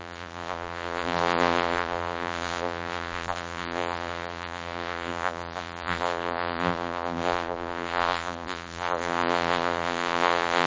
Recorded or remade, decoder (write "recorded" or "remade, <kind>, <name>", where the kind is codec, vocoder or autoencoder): remade, vocoder, BigVGAN v2